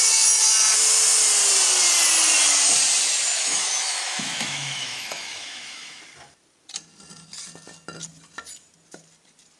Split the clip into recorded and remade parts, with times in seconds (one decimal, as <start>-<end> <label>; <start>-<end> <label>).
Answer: 0.0-3.3 recorded; 3.3-6.0 remade; 6.0-9.6 recorded